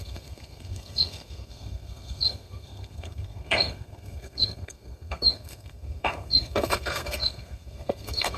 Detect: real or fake fake